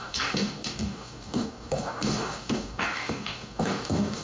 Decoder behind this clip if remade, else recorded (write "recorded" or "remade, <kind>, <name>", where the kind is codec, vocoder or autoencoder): remade, codec, DAC